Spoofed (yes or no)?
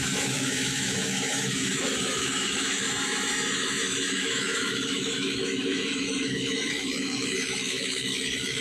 yes